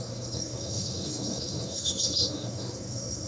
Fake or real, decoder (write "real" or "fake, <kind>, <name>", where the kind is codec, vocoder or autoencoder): fake, codec, SNAC